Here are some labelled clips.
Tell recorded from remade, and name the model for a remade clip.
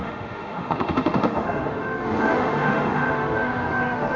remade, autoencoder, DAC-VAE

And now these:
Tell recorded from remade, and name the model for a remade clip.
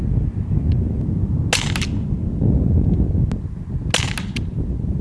recorded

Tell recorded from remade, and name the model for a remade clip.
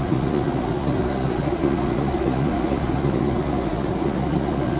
remade, vocoder, Vocos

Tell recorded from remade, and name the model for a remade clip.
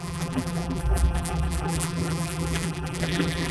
remade, vocoder, BigVGAN v2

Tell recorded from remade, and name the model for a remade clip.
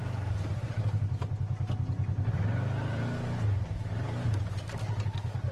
recorded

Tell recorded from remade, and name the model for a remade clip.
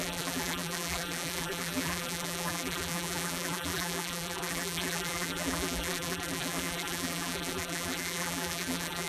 remade, vocoder, BigVGAN v2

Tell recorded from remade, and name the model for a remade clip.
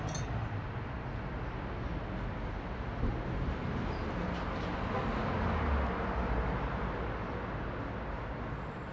recorded